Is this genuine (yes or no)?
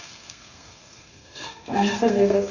no